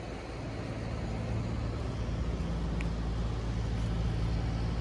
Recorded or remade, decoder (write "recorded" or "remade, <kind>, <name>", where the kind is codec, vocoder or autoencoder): recorded